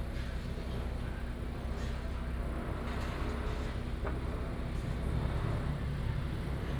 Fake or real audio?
real